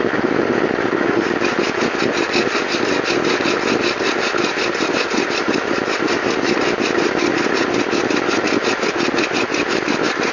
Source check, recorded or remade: recorded